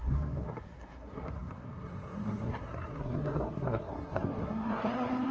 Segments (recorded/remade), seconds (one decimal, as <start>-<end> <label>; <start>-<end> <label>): 0.0-5.3 remade